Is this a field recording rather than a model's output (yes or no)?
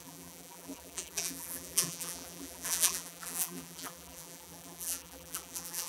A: no